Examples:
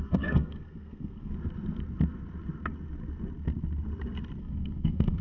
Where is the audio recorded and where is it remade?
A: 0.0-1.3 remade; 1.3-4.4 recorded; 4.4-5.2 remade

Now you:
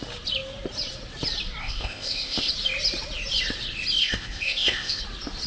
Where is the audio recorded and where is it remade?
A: 0.0-1.6 recorded; 1.6-2.5 remade; 2.5-4.0 recorded; 4.0-5.0 remade; 5.0-5.5 recorded

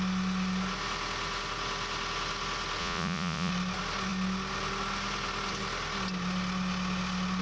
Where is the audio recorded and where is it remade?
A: 0.0-2.8 recorded; 2.8-3.5 remade; 3.5-7.4 recorded

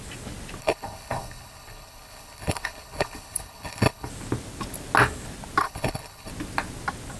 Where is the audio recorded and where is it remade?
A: 0.0-0.6 recorded; 0.6-4.1 remade; 4.1-5.6 recorded; 5.6-6.3 remade; 6.3-7.2 recorded

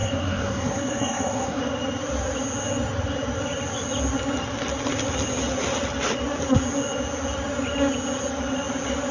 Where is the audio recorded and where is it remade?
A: 0.0-1.6 remade; 1.6-9.1 recorded

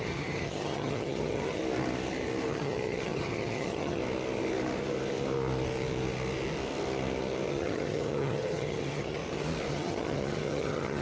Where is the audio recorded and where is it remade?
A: 0.0-1.6 remade; 1.6-2.5 recorded; 2.5-4.0 remade; 4.0-7.5 recorded; 7.5-9.2 remade; 9.2-9.7 recorded; 9.7-11.0 remade